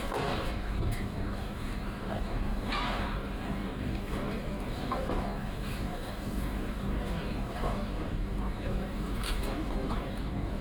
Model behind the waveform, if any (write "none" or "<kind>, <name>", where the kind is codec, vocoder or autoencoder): codec, DAC